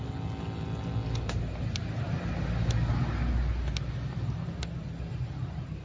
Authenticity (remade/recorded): recorded